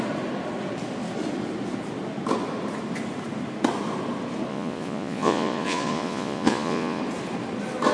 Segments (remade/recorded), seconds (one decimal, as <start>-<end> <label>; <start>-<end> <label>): 0.0-4.5 recorded; 4.5-7.0 remade; 7.0-7.9 recorded